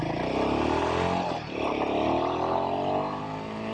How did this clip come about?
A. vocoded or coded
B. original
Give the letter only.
B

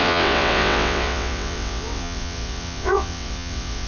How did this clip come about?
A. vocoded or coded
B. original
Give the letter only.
A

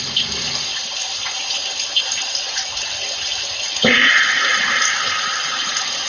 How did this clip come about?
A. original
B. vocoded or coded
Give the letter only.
A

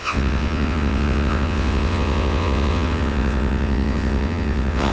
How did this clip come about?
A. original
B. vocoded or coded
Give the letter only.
B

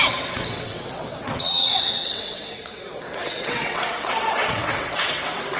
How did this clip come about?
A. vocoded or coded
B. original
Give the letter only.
A